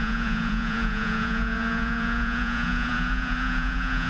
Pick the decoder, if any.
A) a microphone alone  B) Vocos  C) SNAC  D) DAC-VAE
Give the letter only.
B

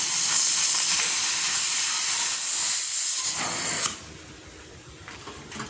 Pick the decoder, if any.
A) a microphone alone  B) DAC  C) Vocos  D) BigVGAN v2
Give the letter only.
A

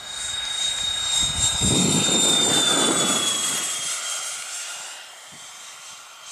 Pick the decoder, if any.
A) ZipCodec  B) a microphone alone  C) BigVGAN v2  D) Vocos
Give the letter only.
B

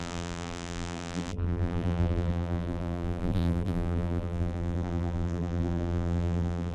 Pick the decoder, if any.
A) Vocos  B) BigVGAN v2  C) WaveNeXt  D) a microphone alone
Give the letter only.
B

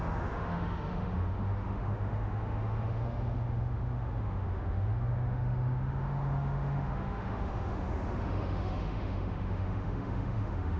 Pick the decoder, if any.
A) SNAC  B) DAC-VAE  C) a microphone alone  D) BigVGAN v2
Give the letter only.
B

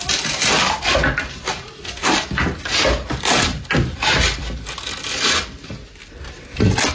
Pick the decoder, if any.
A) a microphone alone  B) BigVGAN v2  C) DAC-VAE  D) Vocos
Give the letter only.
A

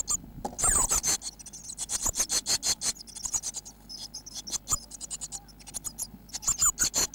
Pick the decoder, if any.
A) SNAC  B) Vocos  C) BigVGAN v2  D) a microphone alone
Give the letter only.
D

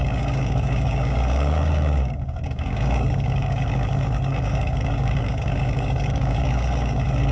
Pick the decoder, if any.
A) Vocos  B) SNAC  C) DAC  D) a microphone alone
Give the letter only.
C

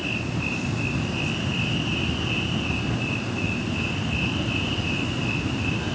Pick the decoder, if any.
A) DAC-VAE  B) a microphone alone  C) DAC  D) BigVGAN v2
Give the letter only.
B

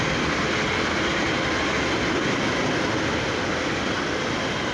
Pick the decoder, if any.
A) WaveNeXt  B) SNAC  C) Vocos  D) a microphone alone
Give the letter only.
D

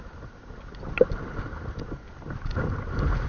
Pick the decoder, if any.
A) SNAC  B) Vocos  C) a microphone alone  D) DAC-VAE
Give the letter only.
C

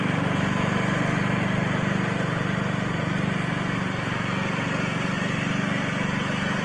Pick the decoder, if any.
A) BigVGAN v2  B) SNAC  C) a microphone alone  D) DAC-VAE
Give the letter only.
C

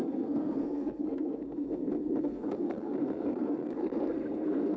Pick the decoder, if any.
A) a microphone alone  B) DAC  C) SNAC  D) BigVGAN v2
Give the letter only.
C